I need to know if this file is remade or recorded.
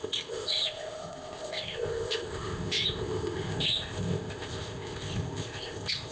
remade